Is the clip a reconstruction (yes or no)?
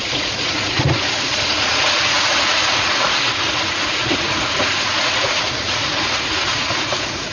yes